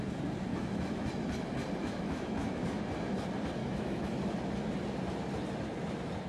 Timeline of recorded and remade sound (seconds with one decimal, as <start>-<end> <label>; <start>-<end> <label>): 0.0-0.5 recorded; 0.5-1.1 remade; 1.1-1.8 recorded; 1.8-2.8 remade; 2.8-3.6 recorded; 3.6-4.3 remade; 4.3-6.3 recorded